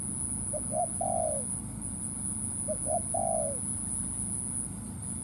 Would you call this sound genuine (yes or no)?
yes